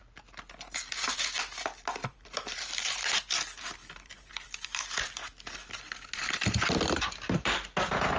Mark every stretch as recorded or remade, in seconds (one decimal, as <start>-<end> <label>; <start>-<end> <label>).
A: 0.0-2.0 recorded; 2.0-3.2 remade; 3.2-3.8 recorded; 3.8-4.8 remade; 4.8-8.2 recorded